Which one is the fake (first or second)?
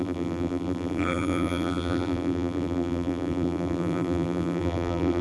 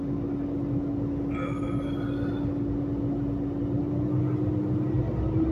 first